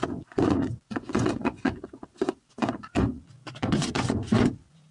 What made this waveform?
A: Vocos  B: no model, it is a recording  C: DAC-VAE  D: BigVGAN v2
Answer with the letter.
A